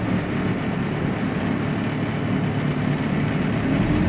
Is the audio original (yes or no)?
yes